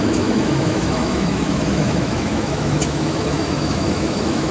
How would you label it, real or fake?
fake